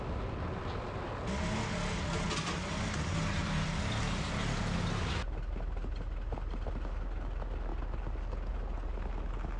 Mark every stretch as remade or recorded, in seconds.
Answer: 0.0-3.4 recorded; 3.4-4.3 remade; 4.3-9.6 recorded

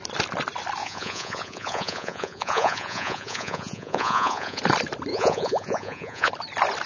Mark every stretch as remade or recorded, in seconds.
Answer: 0.0-0.8 recorded; 0.8-4.6 remade; 4.6-5.1 recorded; 5.1-6.3 remade; 6.3-6.9 recorded

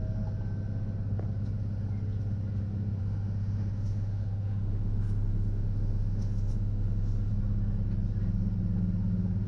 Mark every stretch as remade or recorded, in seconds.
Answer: 0.0-3.0 recorded; 3.0-7.3 remade; 7.3-9.5 recorded

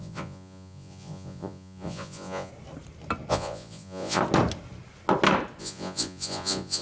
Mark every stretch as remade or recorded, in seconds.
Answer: 0.0-2.5 remade; 2.5-3.3 recorded; 3.3-4.2 remade; 4.2-5.6 recorded; 5.6-6.8 remade

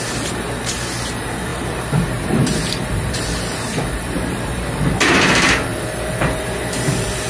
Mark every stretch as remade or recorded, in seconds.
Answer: 0.0-7.3 remade

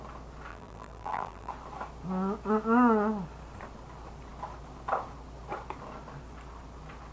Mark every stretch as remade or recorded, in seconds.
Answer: 0.0-0.5 recorded; 0.5-1.5 remade; 1.5-7.1 recorded

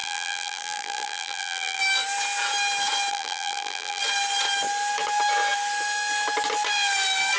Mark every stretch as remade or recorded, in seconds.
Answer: 0.0-1.8 remade; 1.8-3.1 recorded; 3.1-4.0 remade; 4.0-7.4 recorded